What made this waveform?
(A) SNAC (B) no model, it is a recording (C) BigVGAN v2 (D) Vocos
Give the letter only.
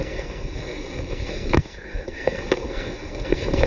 A